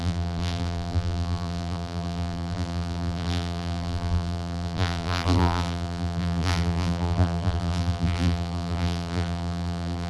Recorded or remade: remade